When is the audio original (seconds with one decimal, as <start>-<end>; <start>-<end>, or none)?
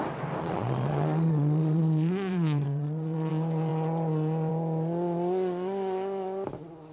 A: 0.0-0.4; 3.3-6.9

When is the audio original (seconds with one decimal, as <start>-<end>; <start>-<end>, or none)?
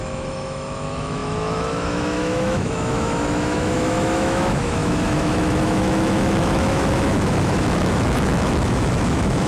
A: none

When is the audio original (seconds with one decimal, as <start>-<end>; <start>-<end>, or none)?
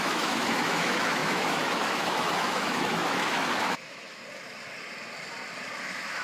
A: 4.2-5.8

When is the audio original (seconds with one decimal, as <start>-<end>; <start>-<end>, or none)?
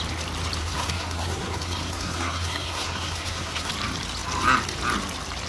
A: 0.0-0.6; 3.7-5.5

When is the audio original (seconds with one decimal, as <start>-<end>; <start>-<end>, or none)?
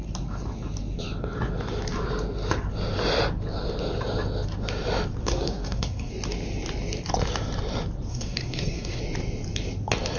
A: 0.0-5.2; 6.1-8.1; 9.0-10.2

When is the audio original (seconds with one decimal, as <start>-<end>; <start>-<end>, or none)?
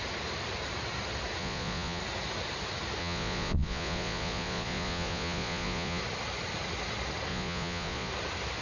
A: 0.0-1.4; 2.0-3.0; 6.0-7.3; 8.1-8.6